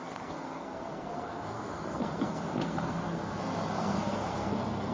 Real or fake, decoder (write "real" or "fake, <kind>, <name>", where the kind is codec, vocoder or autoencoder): fake, codec, SNAC